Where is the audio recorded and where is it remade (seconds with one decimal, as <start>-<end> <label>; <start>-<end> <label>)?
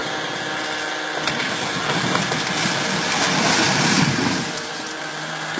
0.0-3.4 recorded; 3.4-5.6 remade